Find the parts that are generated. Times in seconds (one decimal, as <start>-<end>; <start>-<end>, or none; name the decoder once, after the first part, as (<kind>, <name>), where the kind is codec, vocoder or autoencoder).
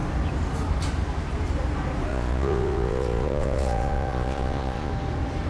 2.1-4.9 (vocoder, Vocos)